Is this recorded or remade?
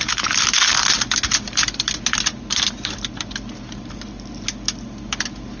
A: recorded